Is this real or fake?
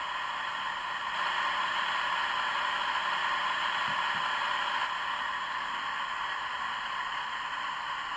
real